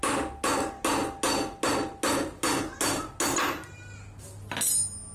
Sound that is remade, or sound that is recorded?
recorded